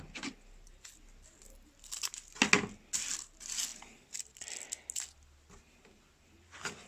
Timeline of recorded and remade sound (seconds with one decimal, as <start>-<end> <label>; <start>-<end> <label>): 0.0-6.9 recorded